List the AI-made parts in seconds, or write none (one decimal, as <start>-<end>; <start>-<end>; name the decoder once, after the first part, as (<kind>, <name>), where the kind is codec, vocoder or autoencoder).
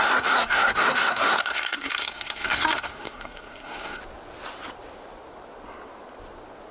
0.0-4.0 (codec, SNAC)